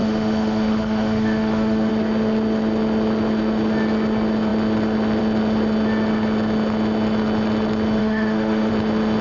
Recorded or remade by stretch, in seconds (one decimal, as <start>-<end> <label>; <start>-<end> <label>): 0.0-1.9 remade; 1.9-8.0 recorded; 8.0-8.7 remade; 8.7-9.2 recorded